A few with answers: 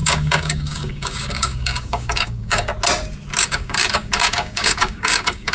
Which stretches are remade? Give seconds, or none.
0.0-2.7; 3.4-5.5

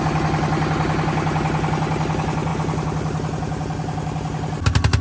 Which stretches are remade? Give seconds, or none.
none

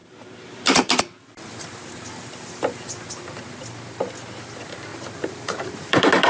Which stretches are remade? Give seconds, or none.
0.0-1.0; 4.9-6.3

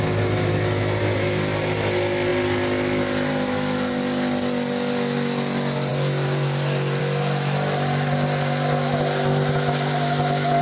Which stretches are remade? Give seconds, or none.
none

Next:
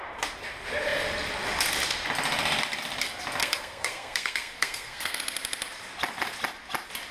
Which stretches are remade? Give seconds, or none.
3.4-5.2

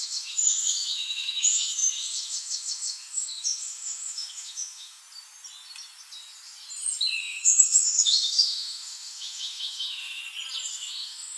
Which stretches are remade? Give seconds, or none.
0.0-5.0; 7.2-10.2; 10.7-11.4